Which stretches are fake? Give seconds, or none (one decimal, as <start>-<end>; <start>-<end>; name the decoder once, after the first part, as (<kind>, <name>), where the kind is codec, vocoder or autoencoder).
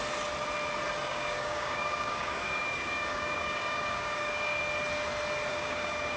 1.1-4.6 (codec, DAC); 5.5-6.2